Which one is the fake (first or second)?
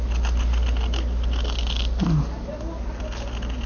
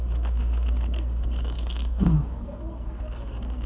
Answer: second